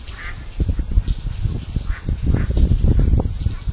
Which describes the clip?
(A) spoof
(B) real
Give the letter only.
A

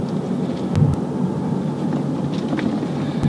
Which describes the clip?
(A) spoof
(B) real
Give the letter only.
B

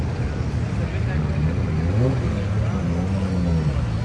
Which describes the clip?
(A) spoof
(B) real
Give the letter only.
B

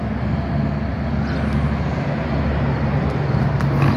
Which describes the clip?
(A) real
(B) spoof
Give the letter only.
A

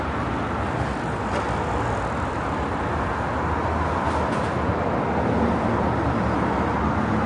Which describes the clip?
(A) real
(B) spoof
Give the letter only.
A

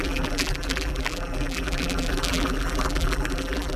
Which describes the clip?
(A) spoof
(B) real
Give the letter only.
A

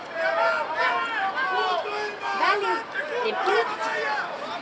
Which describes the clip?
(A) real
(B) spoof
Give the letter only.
A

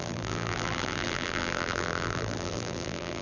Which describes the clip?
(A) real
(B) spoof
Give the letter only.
B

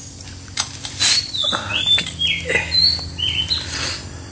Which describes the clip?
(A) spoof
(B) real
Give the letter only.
B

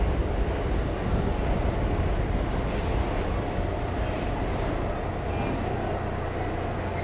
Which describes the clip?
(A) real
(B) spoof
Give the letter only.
A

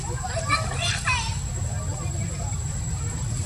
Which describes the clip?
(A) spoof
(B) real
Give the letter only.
A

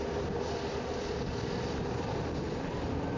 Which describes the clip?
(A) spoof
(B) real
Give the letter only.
B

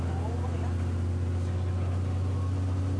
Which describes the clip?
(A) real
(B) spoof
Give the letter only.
A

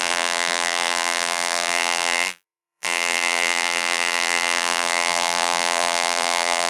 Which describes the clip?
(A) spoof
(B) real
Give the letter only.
A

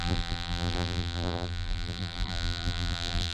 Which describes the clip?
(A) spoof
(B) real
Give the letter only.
A